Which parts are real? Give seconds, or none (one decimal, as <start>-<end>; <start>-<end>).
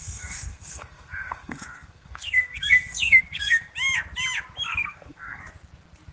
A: 3.7-4.7; 5.4-6.1